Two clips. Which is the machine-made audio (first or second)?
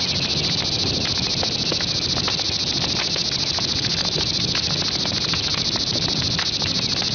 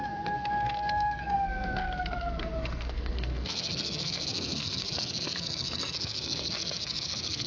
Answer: second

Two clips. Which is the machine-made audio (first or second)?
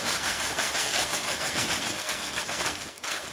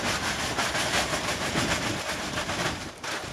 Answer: first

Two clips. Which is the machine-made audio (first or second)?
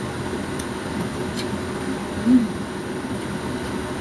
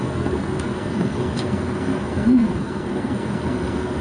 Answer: second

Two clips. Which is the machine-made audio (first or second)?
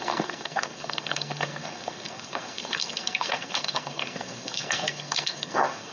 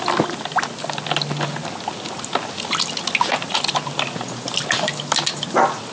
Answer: first